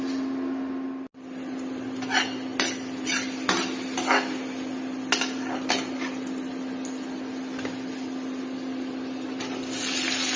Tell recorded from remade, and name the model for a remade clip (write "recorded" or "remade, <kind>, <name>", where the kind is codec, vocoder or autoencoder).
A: recorded